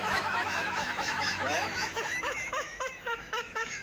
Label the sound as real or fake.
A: fake